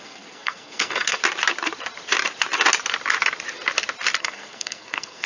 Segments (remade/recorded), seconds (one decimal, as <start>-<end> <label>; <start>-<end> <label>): 0.0-1.2 remade; 1.2-4.2 recorded; 4.2-5.3 remade